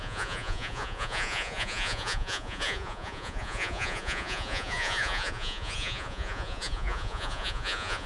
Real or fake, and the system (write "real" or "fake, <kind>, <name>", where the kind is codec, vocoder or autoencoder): fake, vocoder, Vocos